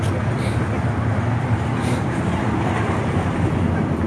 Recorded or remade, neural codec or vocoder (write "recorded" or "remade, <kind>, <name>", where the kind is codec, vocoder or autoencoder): recorded